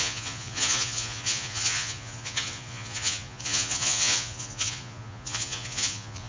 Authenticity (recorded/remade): remade